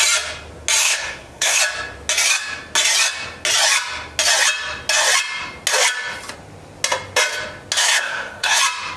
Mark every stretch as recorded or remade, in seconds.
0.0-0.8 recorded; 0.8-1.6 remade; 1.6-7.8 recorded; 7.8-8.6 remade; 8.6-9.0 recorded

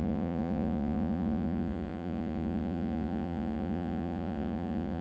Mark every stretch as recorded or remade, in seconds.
0.0-5.0 remade

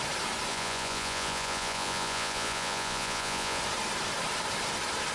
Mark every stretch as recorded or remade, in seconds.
0.0-0.5 recorded; 0.5-3.6 remade; 3.6-5.1 recorded